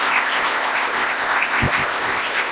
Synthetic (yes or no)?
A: yes